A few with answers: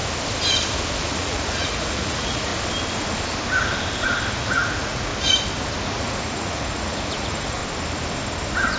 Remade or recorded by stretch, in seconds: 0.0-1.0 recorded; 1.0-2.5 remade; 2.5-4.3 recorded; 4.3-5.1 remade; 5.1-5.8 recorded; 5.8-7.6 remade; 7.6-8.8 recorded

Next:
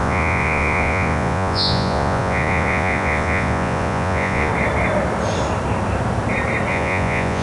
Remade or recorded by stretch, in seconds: 0.0-4.5 remade; 4.5-6.7 recorded; 6.7-7.4 remade